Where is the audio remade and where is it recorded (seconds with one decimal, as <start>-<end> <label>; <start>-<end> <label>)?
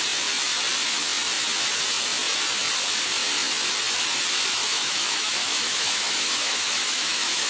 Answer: 0.0-4.7 recorded; 4.7-7.5 remade